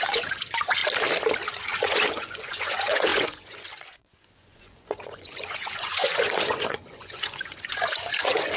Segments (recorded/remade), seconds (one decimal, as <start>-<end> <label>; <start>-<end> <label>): 0.0-0.8 remade; 0.8-1.6 recorded; 1.6-8.6 remade